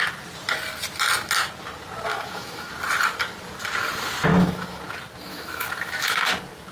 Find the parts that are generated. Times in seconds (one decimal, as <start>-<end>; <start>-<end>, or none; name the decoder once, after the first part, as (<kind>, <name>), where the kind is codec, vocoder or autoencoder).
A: 2.1-2.7 (autoencoder, DAC-VAE); 4.3-4.8; 5.3-6.3

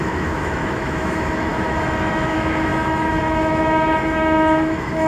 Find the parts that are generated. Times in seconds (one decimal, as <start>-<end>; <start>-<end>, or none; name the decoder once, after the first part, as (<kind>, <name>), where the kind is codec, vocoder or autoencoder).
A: 0.0-5.1 (autoencoder, DAC-VAE)

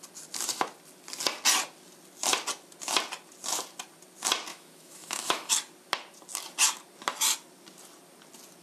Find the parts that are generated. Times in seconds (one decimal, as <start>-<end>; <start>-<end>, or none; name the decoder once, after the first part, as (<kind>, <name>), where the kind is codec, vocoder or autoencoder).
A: 4.5-5.5 (autoencoder, DAC-VAE)

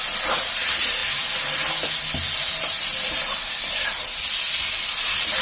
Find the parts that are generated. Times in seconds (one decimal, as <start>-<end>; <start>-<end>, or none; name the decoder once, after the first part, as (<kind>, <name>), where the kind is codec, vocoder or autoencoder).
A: none